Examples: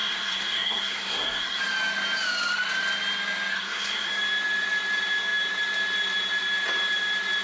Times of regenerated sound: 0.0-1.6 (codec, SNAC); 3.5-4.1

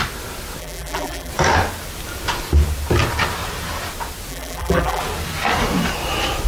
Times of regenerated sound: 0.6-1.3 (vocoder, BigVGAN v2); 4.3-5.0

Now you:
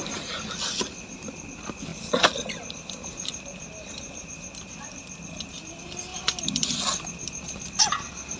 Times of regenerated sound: none